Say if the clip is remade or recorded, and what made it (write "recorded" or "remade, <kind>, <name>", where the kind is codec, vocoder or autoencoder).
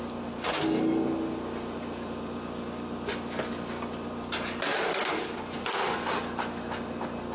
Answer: recorded